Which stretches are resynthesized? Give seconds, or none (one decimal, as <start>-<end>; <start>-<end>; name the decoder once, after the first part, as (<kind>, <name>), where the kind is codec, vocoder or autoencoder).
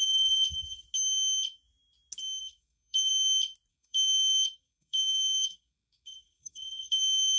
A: 2.4-3.1 (codec, DAC); 3.7-7.4